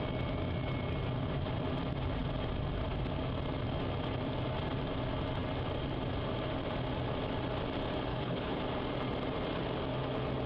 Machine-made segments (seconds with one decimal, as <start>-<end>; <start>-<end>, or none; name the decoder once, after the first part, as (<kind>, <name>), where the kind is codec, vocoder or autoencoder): 8.1-8.6 (codec, HILCodec)